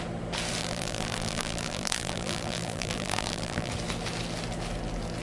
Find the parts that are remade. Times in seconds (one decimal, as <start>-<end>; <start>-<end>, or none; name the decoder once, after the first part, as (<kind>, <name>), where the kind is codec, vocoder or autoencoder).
0.6-3.7 (vocoder, BigVGAN v2)

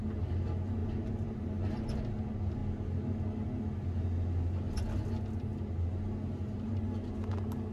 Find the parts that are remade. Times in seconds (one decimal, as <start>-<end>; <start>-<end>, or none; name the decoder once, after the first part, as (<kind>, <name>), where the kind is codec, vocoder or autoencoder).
0.8-2.0 (vocoder, BigVGAN v2)

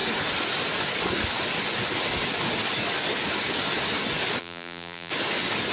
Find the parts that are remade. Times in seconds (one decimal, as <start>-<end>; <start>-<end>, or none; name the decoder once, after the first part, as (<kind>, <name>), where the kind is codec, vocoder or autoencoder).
4.4-5.1 (vocoder, BigVGAN v2)

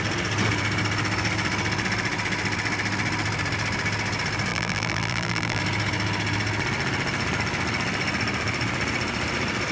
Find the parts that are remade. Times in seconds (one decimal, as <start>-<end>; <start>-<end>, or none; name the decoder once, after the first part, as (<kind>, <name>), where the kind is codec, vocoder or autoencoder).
4.5-5.6 (vocoder, BigVGAN v2)

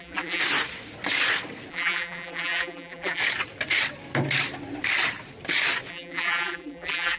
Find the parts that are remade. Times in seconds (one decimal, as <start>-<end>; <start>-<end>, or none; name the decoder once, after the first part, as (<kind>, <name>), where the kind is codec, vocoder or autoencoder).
0.0-0.4 (vocoder, BigVGAN v2); 1.7-3.2; 5.9-7.2

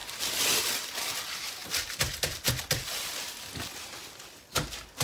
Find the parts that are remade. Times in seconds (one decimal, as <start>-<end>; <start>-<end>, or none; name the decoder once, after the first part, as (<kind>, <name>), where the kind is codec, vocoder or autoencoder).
0.0-0.7 (vocoder, BigVGAN v2); 1.6-2.5

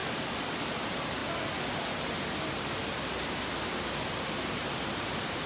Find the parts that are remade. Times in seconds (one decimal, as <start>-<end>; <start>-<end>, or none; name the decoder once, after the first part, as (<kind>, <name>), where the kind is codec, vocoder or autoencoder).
0.7-1.2 (vocoder, BigVGAN v2); 4.1-5.5

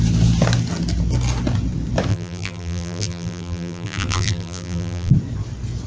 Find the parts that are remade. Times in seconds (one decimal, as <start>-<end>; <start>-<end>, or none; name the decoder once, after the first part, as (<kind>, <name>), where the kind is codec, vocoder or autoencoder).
2.1-5.1 (vocoder, BigVGAN v2)